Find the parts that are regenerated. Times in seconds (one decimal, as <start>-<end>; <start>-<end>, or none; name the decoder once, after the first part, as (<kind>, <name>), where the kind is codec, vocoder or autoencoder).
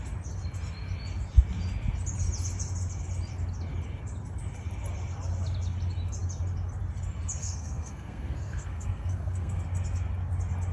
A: 7.4-9.6 (codec, SNAC)